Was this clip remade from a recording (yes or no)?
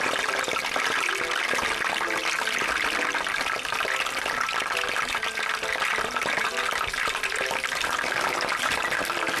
no